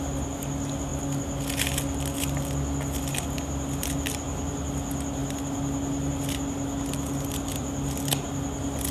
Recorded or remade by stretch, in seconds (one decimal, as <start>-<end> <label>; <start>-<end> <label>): 0.0-8.9 recorded

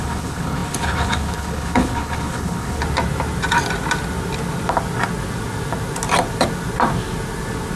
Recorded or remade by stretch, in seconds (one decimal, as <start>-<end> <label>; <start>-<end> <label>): 0.0-2.8 remade; 2.8-7.8 recorded